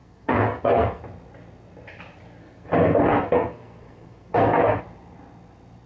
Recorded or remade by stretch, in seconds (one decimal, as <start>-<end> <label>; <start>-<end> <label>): 0.0-1.0 remade; 1.0-2.4 recorded; 2.4-4.8 remade; 4.8-5.9 recorded